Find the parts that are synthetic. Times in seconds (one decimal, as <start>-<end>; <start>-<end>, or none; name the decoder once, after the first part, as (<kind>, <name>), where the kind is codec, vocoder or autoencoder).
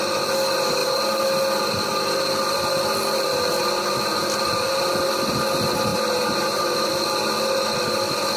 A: 5.9-6.9 (vocoder, BigVGAN v2)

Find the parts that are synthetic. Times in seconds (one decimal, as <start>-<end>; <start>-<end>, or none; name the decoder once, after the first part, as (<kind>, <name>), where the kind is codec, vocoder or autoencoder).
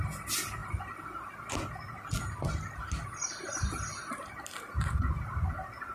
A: none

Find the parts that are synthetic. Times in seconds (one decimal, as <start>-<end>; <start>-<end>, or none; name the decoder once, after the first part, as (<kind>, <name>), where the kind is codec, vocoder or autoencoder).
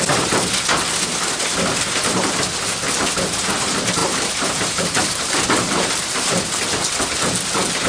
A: 4.0-5.1 (vocoder, BigVGAN v2)